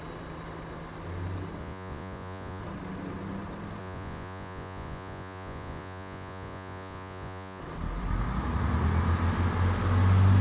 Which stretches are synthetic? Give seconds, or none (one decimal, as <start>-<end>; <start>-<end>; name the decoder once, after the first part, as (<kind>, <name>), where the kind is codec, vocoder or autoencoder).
1.6-2.6 (vocoder, Vocos); 3.8-7.6

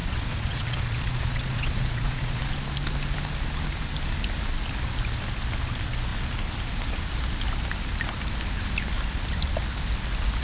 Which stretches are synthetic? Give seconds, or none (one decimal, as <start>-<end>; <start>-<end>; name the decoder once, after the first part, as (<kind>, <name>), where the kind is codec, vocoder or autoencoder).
0.0-2.4 (vocoder, Vocos)

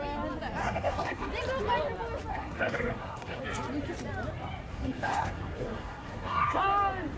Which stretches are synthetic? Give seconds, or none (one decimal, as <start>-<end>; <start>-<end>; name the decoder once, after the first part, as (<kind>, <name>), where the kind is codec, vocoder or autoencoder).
0.6-1.3 (codec, SNAC); 2.3-3.4; 4.7-6.6

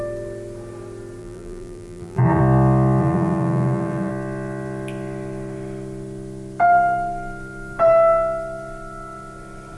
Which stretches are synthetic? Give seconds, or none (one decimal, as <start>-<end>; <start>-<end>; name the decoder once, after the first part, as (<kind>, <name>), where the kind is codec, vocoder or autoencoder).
1.2-2.4 (vocoder, BigVGAN v2); 3.0-4.1

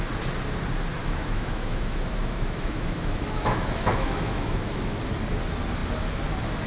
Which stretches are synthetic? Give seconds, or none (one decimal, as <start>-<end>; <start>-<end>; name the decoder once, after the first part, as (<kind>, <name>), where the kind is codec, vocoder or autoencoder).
1.0-5.0 (autoencoder, DAC-VAE)

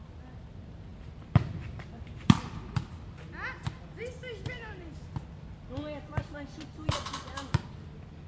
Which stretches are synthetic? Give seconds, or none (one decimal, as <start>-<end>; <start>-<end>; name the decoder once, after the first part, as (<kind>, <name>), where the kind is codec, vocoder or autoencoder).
0.0-8.3 (vocoder, BigVGAN v2)

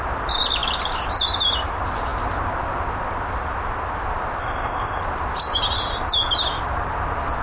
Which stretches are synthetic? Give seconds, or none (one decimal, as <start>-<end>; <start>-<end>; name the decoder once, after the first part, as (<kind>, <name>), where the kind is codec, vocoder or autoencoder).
4.4-5.0 (codec, ZipCodec)

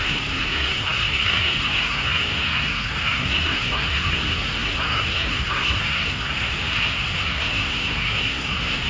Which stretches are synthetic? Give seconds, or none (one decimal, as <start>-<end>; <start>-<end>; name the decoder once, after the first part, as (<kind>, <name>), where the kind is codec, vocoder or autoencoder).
0.0-8.9 (codec, SNAC)